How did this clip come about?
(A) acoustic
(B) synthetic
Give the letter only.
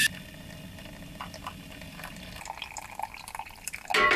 A